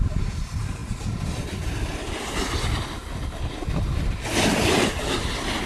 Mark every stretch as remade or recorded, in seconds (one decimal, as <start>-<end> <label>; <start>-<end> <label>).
0.0-5.7 recorded

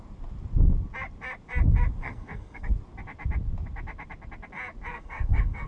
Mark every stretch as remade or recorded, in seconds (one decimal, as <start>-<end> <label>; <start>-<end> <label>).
0.0-2.0 recorded; 2.0-2.7 remade; 2.7-4.9 recorded; 4.9-5.7 remade

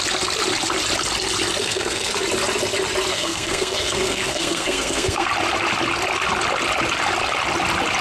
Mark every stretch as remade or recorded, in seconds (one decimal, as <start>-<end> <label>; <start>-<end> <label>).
0.0-1.6 recorded; 1.6-2.1 remade; 2.1-3.1 recorded; 3.1-5.3 remade; 5.3-8.0 recorded

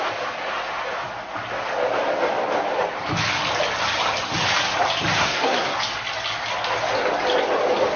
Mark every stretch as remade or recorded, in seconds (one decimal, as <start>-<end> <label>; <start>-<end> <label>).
0.0-5.2 recorded; 5.2-5.8 remade; 5.8-8.0 recorded

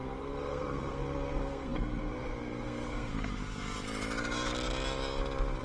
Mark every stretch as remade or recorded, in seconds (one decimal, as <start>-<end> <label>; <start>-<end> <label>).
0.0-3.1 remade; 3.1-5.6 recorded

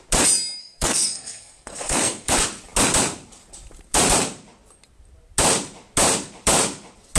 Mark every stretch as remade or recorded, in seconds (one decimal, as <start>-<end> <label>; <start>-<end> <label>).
0.0-0.6 recorded; 0.6-2.3 remade; 2.3-7.2 recorded

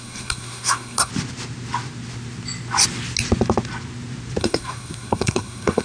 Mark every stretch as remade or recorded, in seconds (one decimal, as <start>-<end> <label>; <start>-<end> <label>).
0.0-1.1 remade; 1.1-4.4 recorded; 4.4-5.8 remade